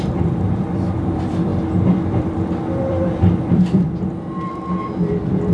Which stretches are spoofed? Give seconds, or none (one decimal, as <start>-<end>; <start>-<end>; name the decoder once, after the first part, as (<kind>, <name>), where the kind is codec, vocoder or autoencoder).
0.0-5.5 (vocoder, BigVGAN v2)